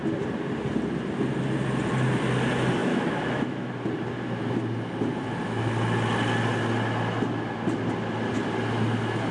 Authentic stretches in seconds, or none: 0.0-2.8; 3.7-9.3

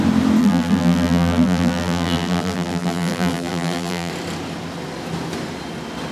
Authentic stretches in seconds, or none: 0.0-0.4; 4.1-6.1